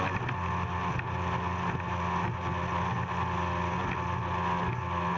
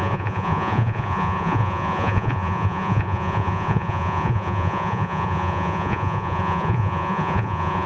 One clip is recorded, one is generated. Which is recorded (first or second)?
first